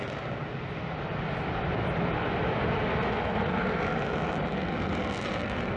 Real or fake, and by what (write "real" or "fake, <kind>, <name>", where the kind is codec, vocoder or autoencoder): real